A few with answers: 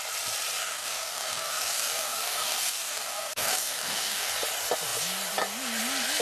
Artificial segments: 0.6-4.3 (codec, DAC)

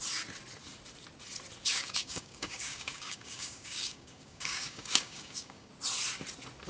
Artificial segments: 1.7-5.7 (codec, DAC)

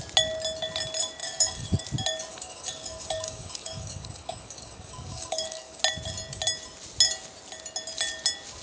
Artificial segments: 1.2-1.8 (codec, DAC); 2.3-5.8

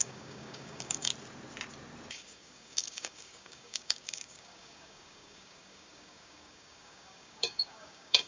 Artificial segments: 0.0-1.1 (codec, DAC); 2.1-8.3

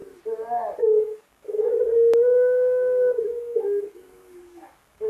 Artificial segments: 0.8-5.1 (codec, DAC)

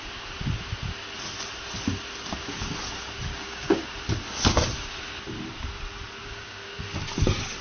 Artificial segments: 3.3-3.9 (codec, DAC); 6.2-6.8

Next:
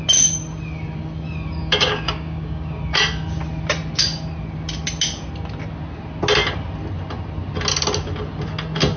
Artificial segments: 1.6-2.8 (codec, DAC)

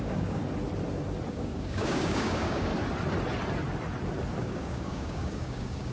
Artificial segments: 0.0-0.4 (codec, DAC); 1.3-2.7; 4.4-5.9